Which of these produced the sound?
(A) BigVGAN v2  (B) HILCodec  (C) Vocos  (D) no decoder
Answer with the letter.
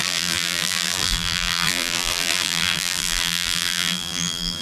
A